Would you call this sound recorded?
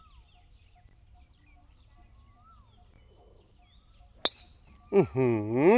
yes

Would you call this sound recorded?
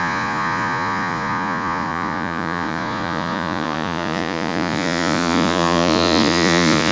no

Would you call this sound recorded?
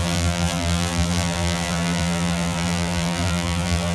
no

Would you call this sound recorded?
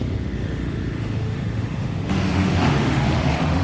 no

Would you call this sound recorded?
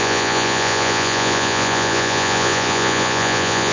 no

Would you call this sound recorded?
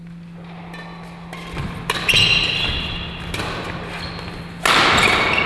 yes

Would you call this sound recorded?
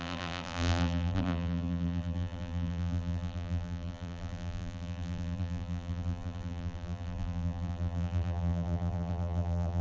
no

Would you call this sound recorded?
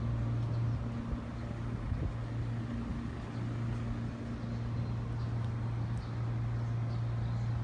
yes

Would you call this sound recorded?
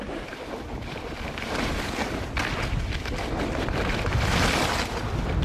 yes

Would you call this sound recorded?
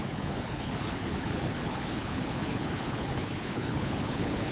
no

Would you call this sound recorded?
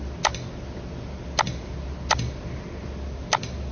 yes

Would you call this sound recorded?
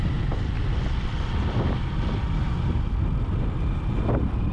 yes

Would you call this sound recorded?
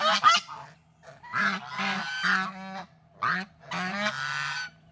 yes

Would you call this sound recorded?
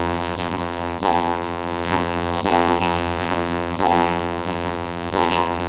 no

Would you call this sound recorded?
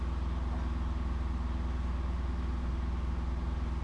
yes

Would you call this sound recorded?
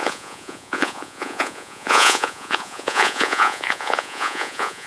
no